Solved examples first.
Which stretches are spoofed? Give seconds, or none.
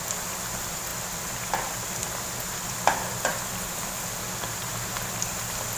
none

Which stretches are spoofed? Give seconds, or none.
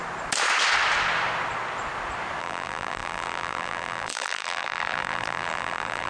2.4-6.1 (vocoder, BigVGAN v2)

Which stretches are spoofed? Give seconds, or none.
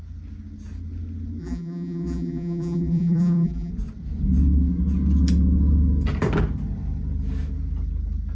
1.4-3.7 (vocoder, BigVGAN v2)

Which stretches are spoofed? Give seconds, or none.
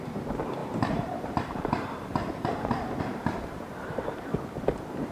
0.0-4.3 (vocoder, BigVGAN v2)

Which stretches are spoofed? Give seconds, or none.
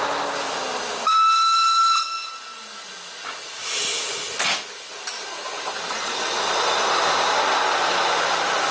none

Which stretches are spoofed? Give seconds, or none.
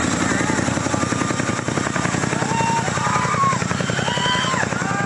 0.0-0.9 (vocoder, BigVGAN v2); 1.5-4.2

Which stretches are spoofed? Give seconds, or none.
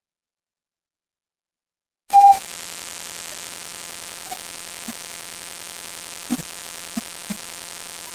none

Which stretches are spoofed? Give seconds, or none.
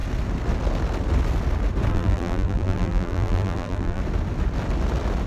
1.9-4.0 (vocoder, BigVGAN v2)